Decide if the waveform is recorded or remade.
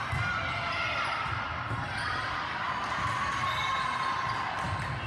recorded